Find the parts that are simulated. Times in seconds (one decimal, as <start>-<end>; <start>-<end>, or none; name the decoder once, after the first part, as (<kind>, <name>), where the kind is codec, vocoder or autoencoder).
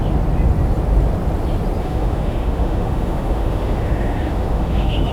1.8-5.1 (autoencoder, DAC-VAE)